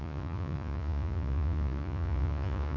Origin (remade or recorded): remade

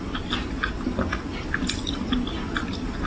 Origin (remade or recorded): recorded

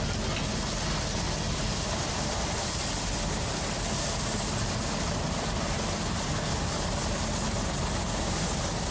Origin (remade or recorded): recorded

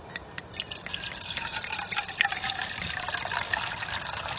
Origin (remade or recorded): recorded